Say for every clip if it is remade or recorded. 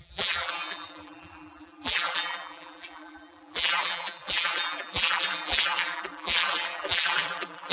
remade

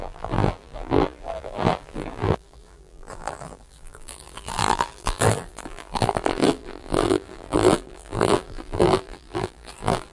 remade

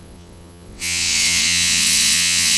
remade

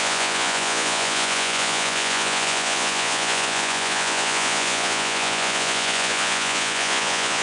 remade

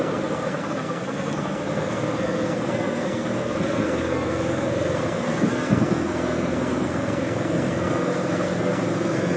remade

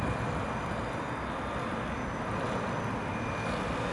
recorded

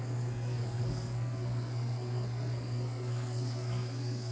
remade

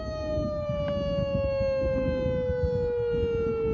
recorded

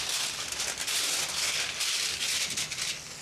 recorded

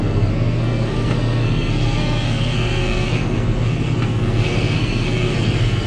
remade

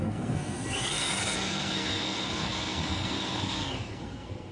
remade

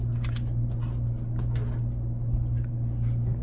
recorded